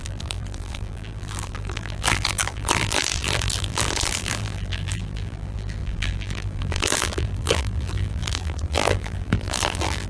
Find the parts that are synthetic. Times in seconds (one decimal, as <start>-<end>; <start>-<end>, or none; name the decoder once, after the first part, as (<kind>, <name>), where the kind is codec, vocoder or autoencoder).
0.0-10.1 (vocoder, BigVGAN v2)